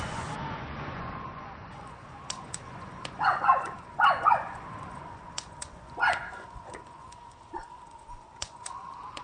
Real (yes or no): no